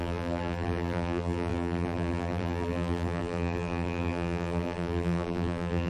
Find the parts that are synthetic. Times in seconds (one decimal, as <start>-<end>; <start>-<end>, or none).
0.0-5.9